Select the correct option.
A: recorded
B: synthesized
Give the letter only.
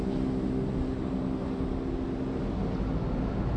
A